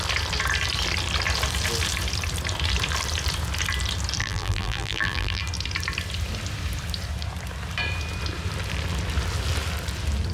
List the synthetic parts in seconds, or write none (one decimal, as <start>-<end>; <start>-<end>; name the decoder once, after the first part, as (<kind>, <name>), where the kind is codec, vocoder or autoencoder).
4.2-5.4 (vocoder, BigVGAN v2)